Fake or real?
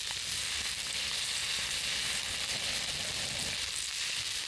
real